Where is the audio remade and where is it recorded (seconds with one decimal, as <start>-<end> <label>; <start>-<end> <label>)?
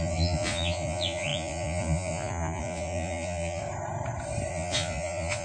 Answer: 0.0-3.6 remade; 3.6-4.5 recorded; 4.5-5.4 remade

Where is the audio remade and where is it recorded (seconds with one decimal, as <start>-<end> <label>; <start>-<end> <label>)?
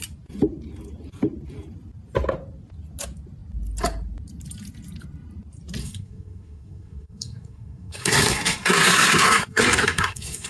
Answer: 0.0-5.8 recorded; 5.8-10.5 remade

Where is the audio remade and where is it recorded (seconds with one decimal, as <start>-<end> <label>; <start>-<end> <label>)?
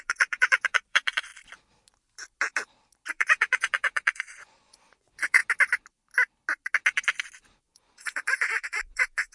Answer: 0.0-1.3 remade; 1.3-3.1 recorded; 3.1-5.4 remade; 5.4-7.6 recorded; 7.6-9.3 remade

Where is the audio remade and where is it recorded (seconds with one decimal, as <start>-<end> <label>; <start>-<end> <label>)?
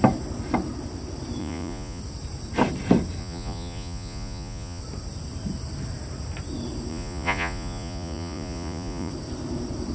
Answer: 0.0-1.4 recorded; 1.4-2.0 remade; 2.0-3.2 recorded; 3.2-4.8 remade; 4.8-6.9 recorded; 6.9-9.1 remade; 9.1-9.9 recorded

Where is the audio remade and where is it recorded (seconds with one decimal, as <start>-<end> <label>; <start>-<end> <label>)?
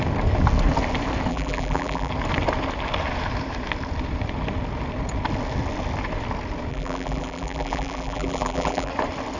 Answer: 0.0-1.3 recorded; 1.3-2.1 remade; 2.1-6.7 recorded; 6.7-8.9 remade; 8.9-9.4 recorded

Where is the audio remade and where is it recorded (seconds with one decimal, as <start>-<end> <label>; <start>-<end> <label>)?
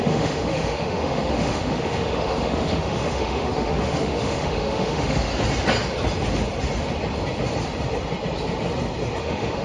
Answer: 0.0-5.3 remade; 5.3-9.2 recorded; 9.2-9.6 remade